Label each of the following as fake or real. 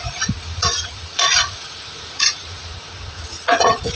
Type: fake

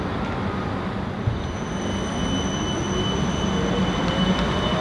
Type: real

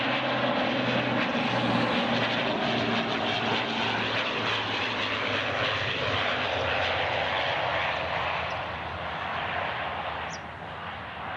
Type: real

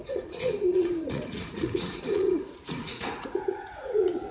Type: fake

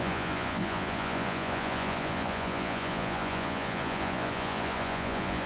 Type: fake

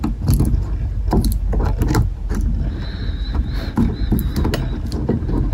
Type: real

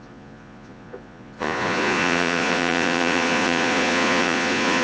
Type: fake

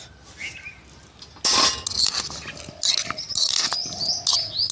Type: real